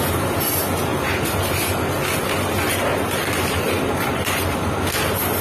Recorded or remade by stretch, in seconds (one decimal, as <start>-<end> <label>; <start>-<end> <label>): 0.0-2.9 recorded; 2.9-4.9 remade; 4.9-5.4 recorded